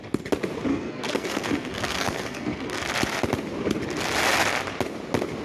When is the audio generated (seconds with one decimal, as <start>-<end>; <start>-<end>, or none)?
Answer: 0.7-2.8